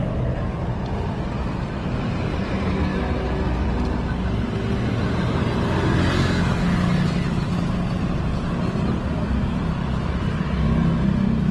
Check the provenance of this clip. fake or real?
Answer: real